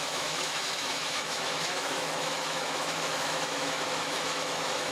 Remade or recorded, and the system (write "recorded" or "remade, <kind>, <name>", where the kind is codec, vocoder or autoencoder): remade, autoencoder, DAC-VAE